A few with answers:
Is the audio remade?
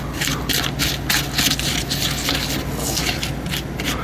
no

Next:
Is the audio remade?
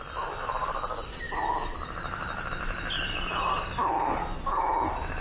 no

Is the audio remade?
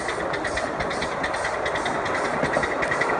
no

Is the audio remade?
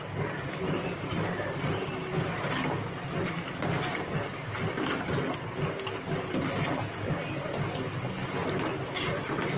no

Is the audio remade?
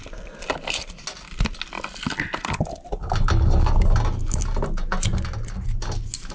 no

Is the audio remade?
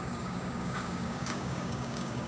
yes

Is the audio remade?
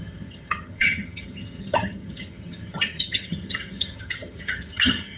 yes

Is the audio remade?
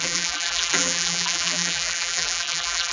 yes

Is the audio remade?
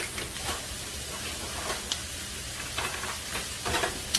no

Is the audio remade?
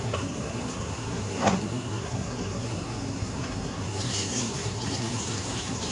yes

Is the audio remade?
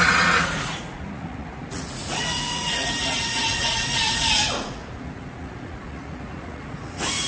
yes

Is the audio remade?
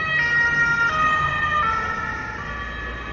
no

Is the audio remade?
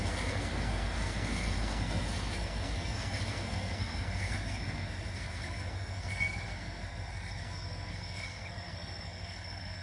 yes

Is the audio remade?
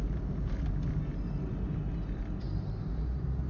no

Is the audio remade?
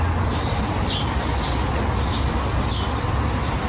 no